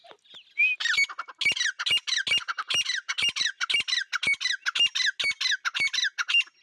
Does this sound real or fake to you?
real